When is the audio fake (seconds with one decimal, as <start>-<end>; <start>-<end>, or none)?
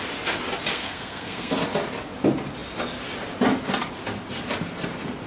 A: 0.7-1.5